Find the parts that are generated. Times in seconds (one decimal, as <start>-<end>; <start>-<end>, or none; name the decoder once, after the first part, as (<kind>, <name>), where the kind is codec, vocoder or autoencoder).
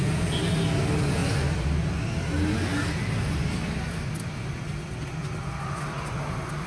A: none